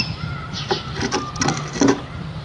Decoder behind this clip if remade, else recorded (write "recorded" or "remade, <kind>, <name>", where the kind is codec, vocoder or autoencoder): recorded